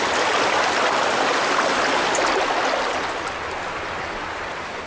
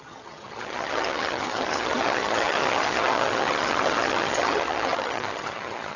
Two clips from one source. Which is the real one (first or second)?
first